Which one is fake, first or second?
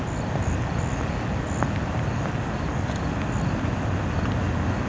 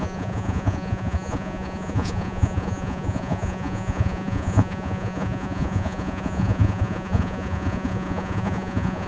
second